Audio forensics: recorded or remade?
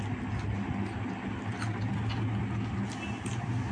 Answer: recorded